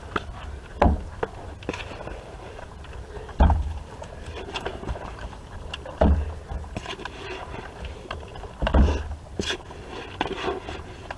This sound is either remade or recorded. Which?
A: recorded